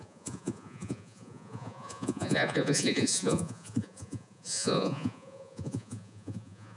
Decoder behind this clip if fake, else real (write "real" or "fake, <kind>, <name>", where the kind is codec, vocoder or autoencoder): fake, vocoder, Vocos